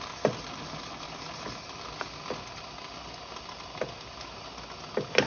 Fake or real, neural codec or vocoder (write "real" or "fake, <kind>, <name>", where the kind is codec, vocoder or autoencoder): real